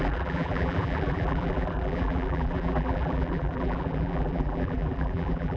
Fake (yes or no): yes